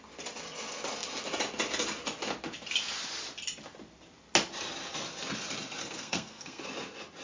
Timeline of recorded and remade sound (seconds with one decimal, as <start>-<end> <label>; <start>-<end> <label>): 0.0-5.8 recorded; 5.8-6.6 remade; 6.6-7.2 recorded